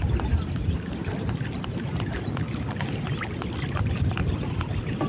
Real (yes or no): yes